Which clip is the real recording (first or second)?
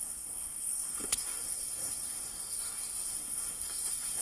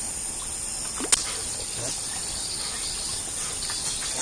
second